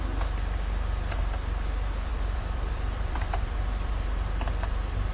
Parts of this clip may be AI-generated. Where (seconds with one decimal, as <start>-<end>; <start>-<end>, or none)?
2.1-3.9

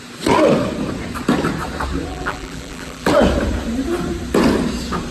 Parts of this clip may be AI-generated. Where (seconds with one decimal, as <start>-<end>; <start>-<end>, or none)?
2.1-3.1